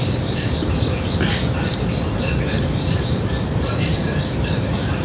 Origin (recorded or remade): remade